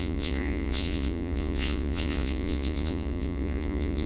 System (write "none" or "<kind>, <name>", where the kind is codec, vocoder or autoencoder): vocoder, Vocos